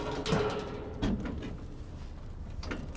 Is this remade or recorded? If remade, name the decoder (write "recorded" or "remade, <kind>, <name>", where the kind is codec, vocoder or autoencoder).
recorded